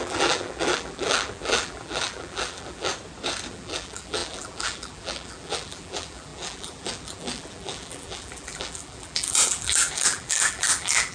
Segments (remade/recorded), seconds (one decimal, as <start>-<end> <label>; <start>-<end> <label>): 0.0-2.9 remade; 2.9-3.5 recorded; 3.5-11.1 remade